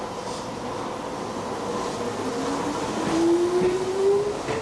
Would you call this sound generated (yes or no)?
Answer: no